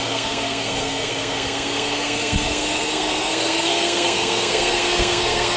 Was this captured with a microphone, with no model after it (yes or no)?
no